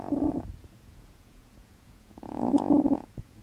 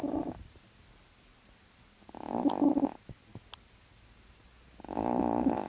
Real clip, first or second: second